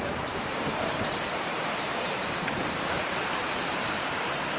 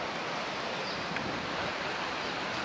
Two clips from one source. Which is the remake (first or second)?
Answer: first